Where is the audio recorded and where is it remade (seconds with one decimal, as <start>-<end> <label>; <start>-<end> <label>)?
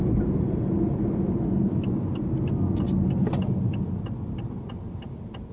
0.0-5.5 recorded